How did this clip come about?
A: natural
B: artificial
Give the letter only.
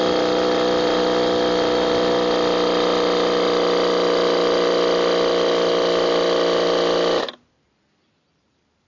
A